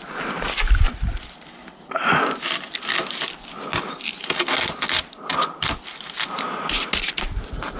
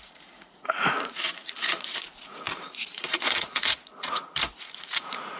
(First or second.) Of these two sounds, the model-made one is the second